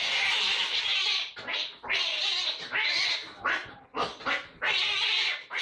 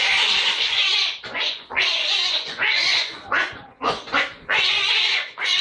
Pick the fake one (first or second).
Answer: second